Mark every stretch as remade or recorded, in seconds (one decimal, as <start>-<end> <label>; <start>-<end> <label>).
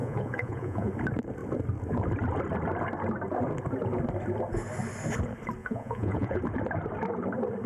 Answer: 0.0-0.9 remade; 0.9-5.6 recorded; 5.6-6.4 remade; 6.4-7.7 recorded